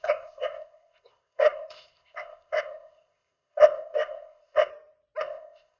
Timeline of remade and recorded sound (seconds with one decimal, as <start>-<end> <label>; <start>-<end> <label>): 0.0-4.7 remade; 4.7-5.2 recorded; 5.2-5.8 remade

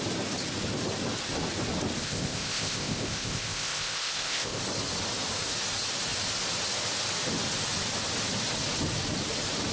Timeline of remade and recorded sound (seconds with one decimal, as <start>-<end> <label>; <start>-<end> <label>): 0.0-2.0 recorded; 2.0-4.6 remade; 4.6-9.7 recorded

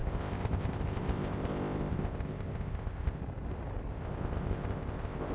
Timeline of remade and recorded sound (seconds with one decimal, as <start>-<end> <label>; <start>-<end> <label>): 0.0-3.2 remade; 3.2-3.9 recorded; 3.9-5.3 remade

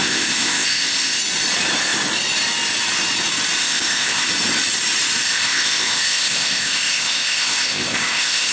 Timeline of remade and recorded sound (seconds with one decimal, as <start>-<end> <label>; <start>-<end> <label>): 0.0-1.2 remade; 1.2-3.6 recorded; 3.6-4.3 remade; 4.3-5.2 recorded; 5.2-8.5 remade